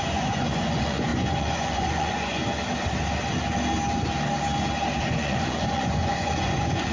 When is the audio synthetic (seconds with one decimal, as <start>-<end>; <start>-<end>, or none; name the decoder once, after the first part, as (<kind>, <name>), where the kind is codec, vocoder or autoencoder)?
0.0-2.4 (vocoder, Vocos); 5.0-6.9